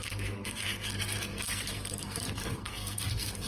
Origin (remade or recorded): remade